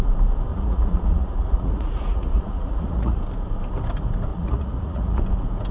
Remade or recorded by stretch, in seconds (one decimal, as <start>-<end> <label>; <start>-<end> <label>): 0.0-0.5 recorded; 0.5-3.2 remade; 3.2-4.3 recorded; 4.3-5.2 remade; 5.2-5.7 recorded